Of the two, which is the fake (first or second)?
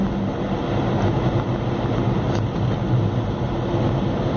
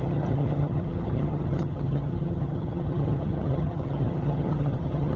second